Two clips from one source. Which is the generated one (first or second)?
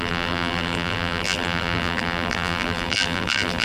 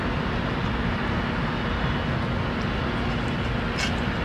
first